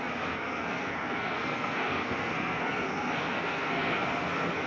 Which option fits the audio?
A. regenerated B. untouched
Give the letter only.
A